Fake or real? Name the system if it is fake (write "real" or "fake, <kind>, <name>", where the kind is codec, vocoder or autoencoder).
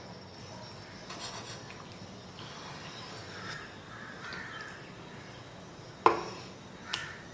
real